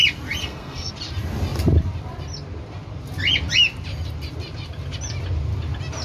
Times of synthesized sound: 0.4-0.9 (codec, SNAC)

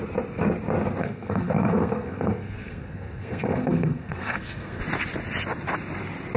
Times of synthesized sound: 1.0-4.8 (codec, SNAC)

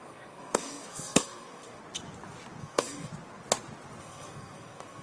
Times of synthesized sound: 0.0-1.8 (codec, SNAC); 2.6-3.1; 4.0-5.0

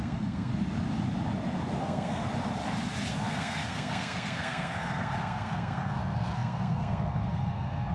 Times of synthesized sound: 0.0-0.5 (codec, SNAC); 1.8-2.2; 3.1-7.9

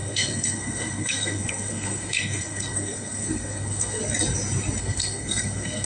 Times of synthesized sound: 0.0-4.0 (codec, SNAC); 4.8-5.8

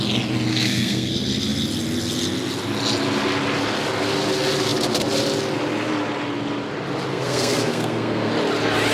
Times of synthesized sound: 0.5-1.1 (codec, SNAC); 7.1-8.3